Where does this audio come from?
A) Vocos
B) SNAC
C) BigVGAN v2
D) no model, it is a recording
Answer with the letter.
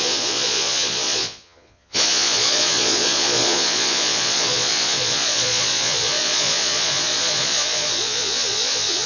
A